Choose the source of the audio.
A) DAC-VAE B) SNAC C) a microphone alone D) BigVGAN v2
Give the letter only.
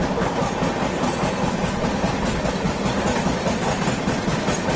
C